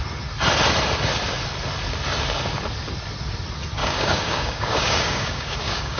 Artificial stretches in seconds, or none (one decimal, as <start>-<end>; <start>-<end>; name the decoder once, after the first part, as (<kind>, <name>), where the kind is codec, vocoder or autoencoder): 3.8-6.0 (codec, DAC)